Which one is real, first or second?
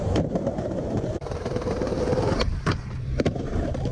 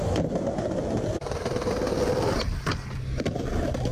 second